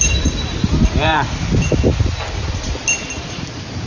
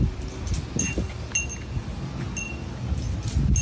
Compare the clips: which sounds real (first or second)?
second